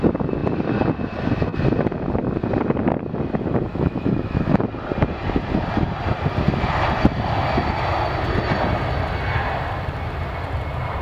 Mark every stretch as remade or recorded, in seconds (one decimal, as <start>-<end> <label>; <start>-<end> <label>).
0.0-3.7 recorded; 3.7-4.6 remade; 4.6-11.0 recorded

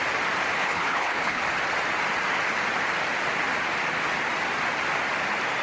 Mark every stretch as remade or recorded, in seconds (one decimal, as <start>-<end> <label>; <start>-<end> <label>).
0.0-0.6 recorded; 0.6-1.4 remade; 1.4-5.6 recorded

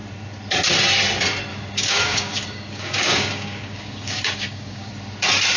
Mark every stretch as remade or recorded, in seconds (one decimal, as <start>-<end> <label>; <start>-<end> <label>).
0.0-1.5 recorded; 1.5-4.9 remade; 4.9-5.6 recorded

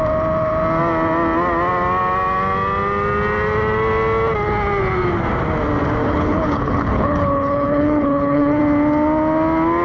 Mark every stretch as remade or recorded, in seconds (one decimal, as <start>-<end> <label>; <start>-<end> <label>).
0.0-6.0 recorded; 6.0-8.6 remade; 8.6-9.8 recorded

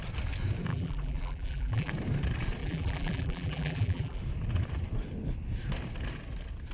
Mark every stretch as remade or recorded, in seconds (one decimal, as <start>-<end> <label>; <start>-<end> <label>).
0.0-0.7 recorded; 0.7-1.9 remade; 1.9-2.6 recorded; 2.6-4.2 remade; 4.2-6.7 recorded

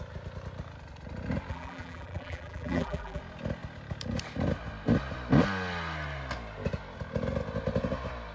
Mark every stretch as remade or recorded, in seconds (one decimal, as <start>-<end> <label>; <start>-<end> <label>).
0.0-1.5 recorded; 1.5-3.2 remade; 3.2-8.3 recorded